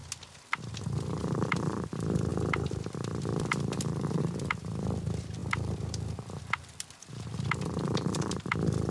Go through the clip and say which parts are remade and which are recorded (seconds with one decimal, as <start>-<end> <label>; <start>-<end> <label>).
0.0-0.6 recorded; 0.6-8.9 remade